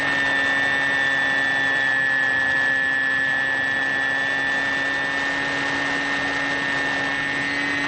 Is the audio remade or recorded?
recorded